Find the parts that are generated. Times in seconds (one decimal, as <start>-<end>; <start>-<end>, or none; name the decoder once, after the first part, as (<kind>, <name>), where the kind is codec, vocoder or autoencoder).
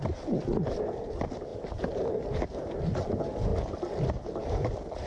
3.5-4.0 (vocoder, BigVGAN v2)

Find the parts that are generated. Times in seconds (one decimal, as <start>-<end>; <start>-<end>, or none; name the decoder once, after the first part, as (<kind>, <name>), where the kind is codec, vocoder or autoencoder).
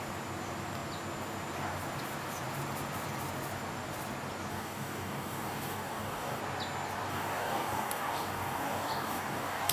4.5-6.4 (codec, DAC); 7.1-9.7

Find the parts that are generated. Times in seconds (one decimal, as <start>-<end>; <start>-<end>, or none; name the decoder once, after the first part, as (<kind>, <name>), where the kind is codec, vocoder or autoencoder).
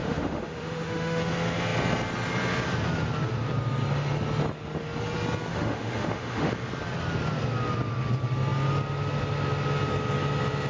0.0-1.2 (autoencoder, DAC-VAE); 5.5-6.5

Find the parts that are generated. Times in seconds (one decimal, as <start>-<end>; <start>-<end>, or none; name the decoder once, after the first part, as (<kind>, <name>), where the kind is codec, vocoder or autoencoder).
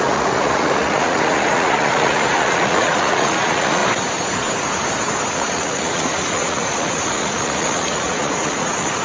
0.0-3.8 (vocoder, Vocos); 5.3-9.0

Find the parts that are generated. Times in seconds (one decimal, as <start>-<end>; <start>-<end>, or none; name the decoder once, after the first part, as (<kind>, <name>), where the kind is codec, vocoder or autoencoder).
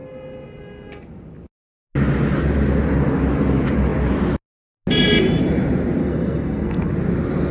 6.0-6.9 (codec, SNAC)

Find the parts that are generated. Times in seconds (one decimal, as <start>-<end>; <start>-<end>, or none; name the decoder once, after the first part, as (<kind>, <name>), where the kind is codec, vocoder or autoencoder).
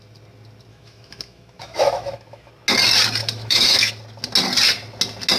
0.7-2.5 (autoencoder, DAC-VAE); 3.2-3.9